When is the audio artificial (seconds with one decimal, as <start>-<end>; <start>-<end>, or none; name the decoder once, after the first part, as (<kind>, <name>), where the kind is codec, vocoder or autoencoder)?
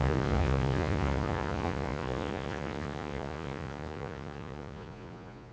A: 0.0-5.5 (vocoder, Vocos)